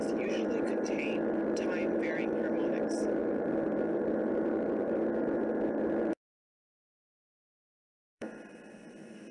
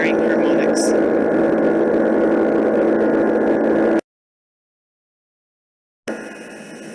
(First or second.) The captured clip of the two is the second